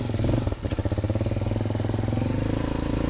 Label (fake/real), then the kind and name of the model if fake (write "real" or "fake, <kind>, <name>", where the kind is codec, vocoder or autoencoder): real